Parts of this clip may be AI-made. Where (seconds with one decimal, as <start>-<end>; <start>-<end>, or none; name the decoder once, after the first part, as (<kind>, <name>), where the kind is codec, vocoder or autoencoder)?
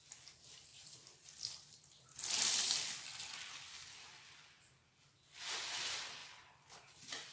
none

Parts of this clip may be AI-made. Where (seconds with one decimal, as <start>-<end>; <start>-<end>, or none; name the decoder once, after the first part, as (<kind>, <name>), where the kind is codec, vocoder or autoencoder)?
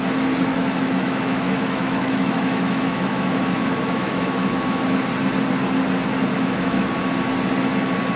0.5-5.0 (autoencoder, DAC-VAE); 6.3-7.0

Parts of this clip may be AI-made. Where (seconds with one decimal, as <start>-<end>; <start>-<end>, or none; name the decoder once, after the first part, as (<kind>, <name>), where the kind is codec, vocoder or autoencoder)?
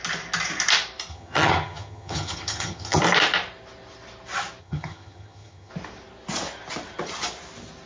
1.1-3.0 (vocoder, HiFi-GAN); 4.6-5.7